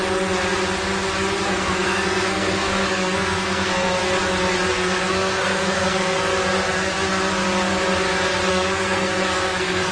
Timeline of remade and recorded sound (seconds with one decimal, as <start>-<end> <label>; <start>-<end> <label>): 0.0-1.4 recorded; 1.4-4.0 remade; 4.0-4.7 recorded; 4.7-6.3 remade; 6.3-8.5 recorded; 8.5-9.9 remade